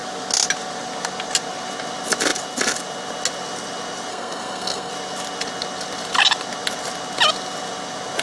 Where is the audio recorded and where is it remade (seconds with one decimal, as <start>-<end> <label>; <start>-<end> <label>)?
0.0-4.1 recorded; 4.1-4.9 remade; 4.9-8.2 recorded